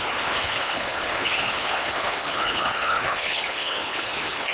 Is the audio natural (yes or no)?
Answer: no